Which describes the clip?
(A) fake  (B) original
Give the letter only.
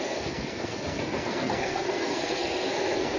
A